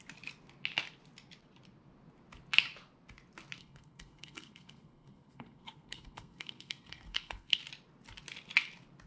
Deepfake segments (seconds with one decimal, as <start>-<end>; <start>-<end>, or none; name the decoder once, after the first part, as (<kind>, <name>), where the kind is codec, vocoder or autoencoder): 3.6-7.6 (codec, SNAC)